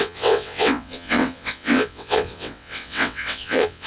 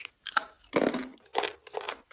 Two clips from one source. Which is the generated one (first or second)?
first